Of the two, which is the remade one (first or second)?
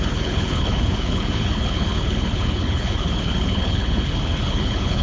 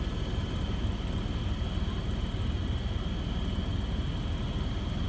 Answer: first